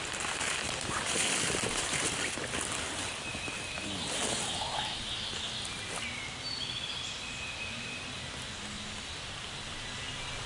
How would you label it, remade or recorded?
recorded